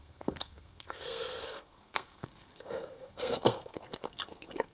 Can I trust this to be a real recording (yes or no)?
no